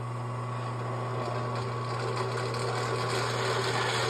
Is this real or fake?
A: real